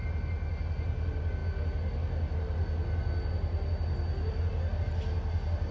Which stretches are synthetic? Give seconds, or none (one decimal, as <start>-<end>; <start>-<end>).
none